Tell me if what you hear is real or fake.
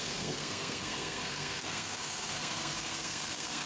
fake